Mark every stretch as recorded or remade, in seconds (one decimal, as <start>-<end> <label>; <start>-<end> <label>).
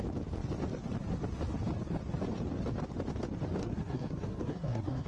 0.0-3.6 recorded; 3.6-5.1 remade